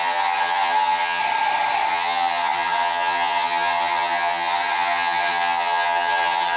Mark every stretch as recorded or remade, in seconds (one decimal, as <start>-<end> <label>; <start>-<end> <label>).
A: 0.0-1.2 remade; 1.2-1.9 recorded; 1.9-6.6 remade